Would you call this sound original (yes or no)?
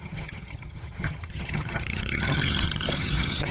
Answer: no